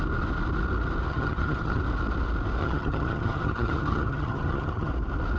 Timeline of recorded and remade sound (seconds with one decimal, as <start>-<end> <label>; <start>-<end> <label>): 0.0-1.1 recorded; 1.1-1.8 remade; 1.8-2.6 recorded; 2.6-4.9 remade; 4.9-5.4 recorded

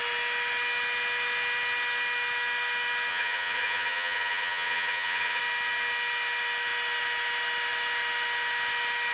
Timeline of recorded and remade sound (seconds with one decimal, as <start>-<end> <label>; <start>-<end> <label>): 0.0-3.1 recorded; 3.1-5.4 remade; 5.4-9.1 recorded

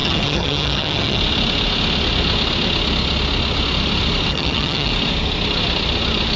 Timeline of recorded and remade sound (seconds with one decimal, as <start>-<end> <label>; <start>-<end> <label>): 0.0-1.2 remade; 1.2-4.3 recorded; 4.3-4.9 remade; 4.9-6.4 recorded